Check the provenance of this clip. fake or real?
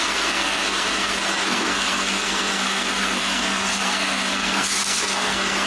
fake